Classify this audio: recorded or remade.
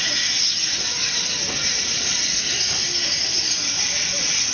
recorded